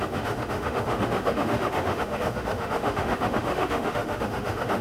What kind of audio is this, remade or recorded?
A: remade